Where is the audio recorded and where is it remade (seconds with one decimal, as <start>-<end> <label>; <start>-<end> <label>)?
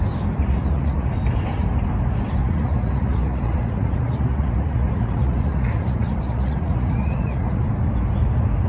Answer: 0.0-0.4 recorded; 0.4-1.1 remade; 1.1-2.4 recorded; 2.4-7.6 remade; 7.6-8.7 recorded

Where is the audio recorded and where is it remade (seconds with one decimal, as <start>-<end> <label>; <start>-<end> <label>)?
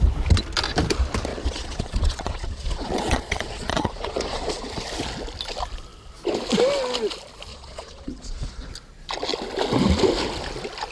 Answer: 0.0-1.3 recorded; 1.3-4.7 remade; 4.7-7.5 recorded; 7.5-8.7 remade; 8.7-10.9 recorded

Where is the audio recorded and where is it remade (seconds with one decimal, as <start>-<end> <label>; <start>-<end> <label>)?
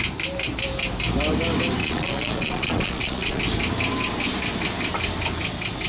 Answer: 0.0-1.8 recorded; 1.8-3.4 remade; 3.4-5.9 recorded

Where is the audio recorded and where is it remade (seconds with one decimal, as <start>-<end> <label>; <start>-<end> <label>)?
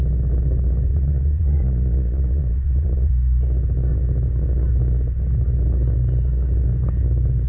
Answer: 0.0-0.9 recorded; 0.9-3.1 remade; 3.1-7.5 recorded